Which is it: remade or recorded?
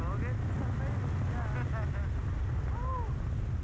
recorded